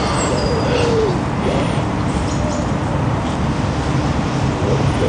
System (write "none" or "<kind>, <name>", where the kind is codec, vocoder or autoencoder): none